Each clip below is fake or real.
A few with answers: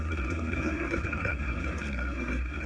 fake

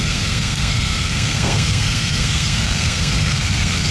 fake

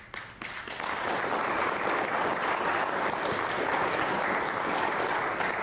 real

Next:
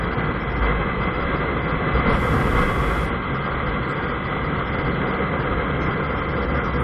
real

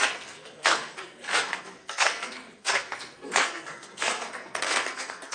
fake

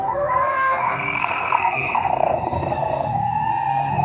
fake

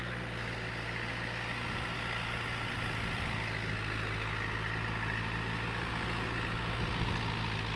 real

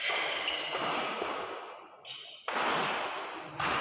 real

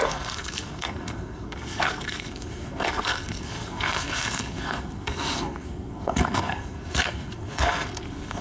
fake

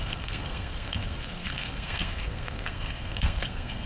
fake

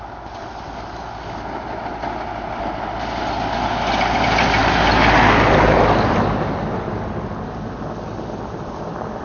real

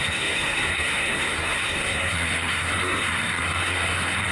fake